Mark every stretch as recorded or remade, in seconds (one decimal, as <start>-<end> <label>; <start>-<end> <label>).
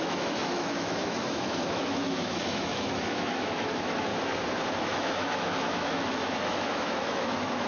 0.0-4.1 remade; 4.1-4.8 recorded; 4.8-7.7 remade